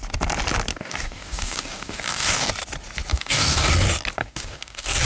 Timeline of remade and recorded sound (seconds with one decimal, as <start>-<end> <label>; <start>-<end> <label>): 0.0-0.7 recorded; 0.7-2.5 remade; 2.5-3.1 recorded; 3.1-3.7 remade; 3.7-4.2 recorded; 4.2-5.0 remade